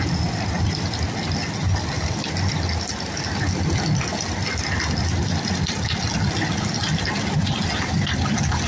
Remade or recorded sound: recorded